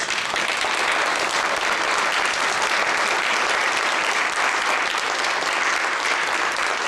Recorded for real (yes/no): yes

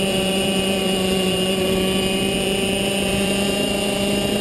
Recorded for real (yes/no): no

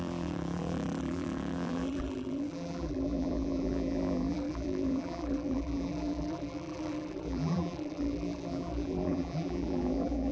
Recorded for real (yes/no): no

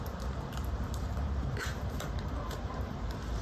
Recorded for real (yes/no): no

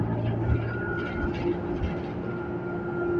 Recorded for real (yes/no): yes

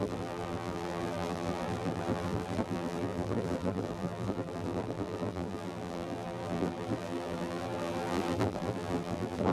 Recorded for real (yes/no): no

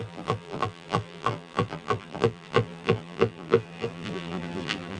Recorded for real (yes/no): no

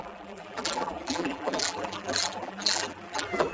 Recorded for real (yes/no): no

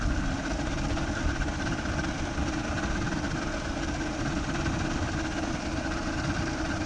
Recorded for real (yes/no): no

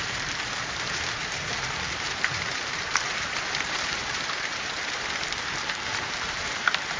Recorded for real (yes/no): no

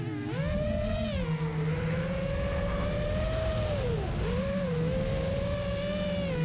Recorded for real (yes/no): yes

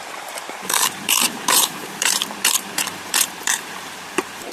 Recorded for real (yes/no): no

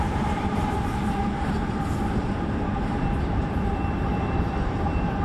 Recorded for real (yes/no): no